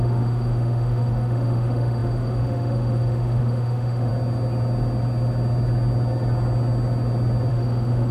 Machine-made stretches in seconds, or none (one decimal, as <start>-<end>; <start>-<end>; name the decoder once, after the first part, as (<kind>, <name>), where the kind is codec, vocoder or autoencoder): 0.0-4.1 (autoencoder, DAC-VAE); 7.5-8.1